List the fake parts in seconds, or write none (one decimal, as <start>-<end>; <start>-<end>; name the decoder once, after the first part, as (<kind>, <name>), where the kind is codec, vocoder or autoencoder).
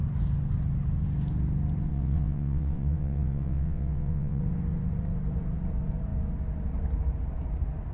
1.9-4.4 (vocoder, WaveNeXt)